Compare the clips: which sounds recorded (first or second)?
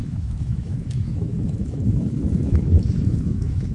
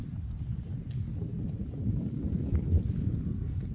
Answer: second